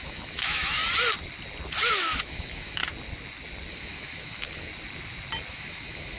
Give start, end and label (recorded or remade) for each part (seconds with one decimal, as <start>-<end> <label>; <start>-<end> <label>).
0.0-0.8 remade; 0.8-1.9 recorded; 1.9-2.8 remade; 2.8-3.7 recorded; 3.7-4.7 remade; 4.7-5.5 recorded; 5.5-6.2 remade